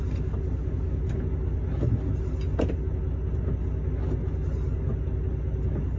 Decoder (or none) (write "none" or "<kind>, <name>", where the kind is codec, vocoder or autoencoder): none